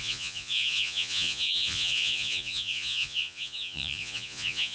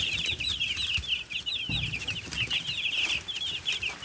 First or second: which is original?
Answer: second